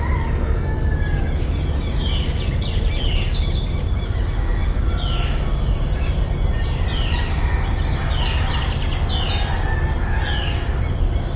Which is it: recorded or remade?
recorded